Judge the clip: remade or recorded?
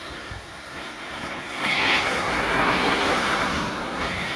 remade